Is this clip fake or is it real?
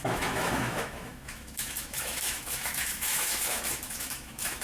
fake